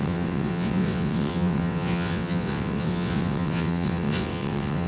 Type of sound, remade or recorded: remade